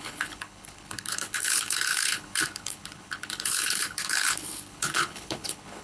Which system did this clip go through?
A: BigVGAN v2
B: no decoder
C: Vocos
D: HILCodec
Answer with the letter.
D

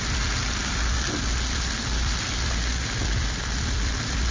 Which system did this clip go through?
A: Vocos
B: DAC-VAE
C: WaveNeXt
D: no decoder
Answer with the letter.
D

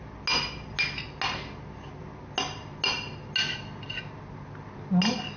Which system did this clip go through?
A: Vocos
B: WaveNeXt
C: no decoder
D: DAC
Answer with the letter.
C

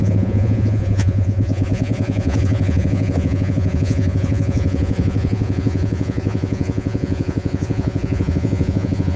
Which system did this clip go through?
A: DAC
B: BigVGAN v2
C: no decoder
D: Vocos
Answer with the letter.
D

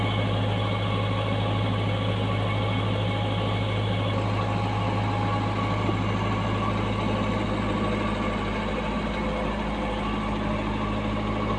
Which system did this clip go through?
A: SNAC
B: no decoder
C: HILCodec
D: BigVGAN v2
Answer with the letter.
B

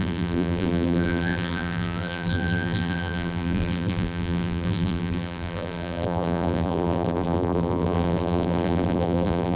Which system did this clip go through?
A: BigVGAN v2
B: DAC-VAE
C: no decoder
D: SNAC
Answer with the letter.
A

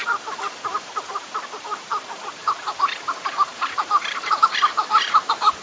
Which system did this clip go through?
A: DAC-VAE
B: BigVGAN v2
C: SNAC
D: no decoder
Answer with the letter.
B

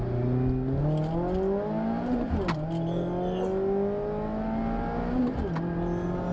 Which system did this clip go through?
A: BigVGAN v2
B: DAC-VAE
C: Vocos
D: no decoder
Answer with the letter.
D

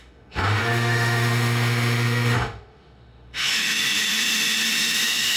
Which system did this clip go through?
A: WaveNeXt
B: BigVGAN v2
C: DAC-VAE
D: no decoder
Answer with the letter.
C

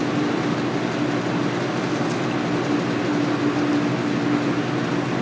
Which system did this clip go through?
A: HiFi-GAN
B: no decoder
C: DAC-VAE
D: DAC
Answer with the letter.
B